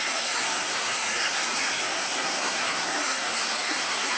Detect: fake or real fake